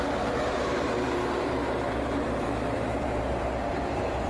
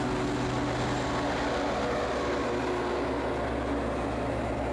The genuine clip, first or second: second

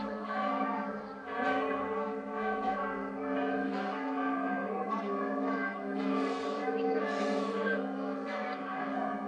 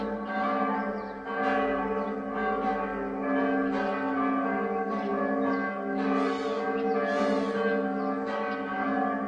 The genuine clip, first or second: second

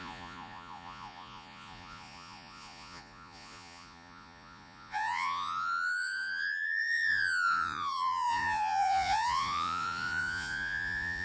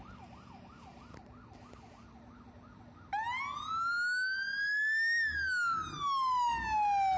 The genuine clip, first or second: second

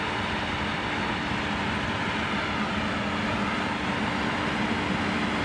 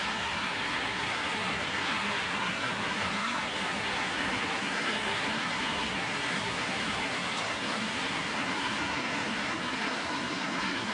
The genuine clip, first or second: first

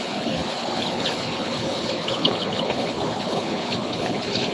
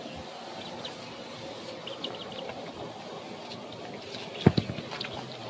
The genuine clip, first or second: second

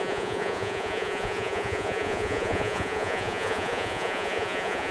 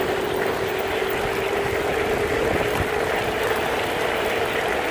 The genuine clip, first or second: second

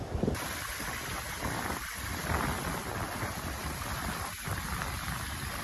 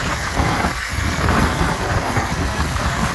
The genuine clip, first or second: first